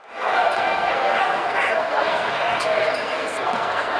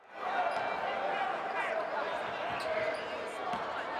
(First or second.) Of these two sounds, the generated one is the first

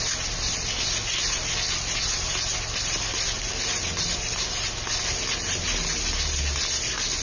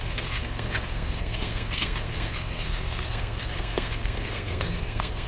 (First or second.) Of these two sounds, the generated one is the second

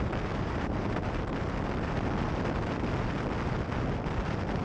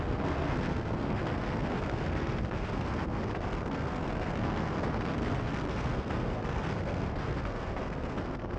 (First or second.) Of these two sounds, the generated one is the second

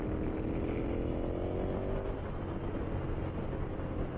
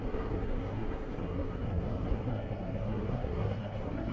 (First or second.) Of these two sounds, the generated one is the second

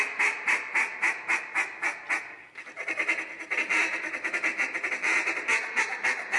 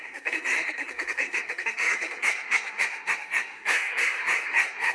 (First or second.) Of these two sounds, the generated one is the second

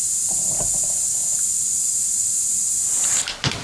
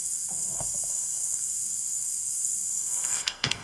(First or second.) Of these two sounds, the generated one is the second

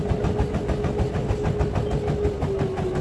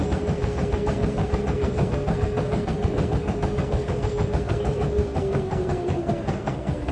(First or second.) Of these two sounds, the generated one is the second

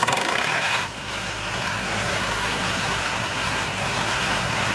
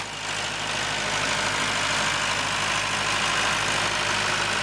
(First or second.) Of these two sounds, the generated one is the first